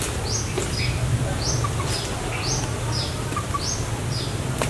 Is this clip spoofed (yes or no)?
no